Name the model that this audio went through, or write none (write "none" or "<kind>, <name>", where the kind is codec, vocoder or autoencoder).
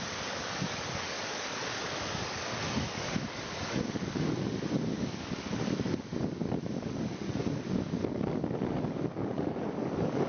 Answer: codec, DAC